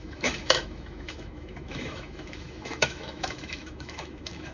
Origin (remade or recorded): remade